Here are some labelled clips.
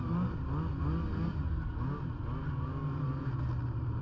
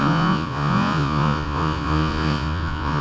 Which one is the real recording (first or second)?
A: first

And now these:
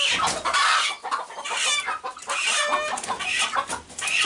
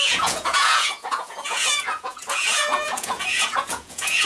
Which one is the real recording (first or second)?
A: first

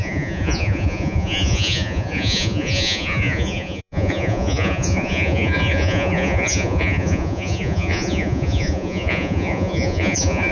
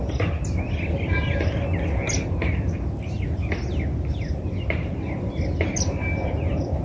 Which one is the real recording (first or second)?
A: second